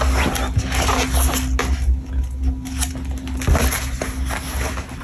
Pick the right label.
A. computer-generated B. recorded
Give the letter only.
B